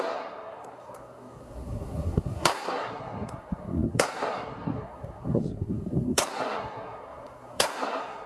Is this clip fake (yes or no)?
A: yes